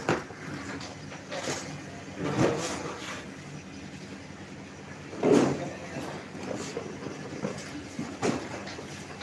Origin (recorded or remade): recorded